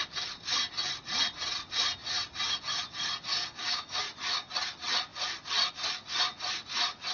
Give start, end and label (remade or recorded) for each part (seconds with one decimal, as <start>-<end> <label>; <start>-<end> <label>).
0.0-3.3 recorded; 3.3-4.0 remade; 4.0-7.1 recorded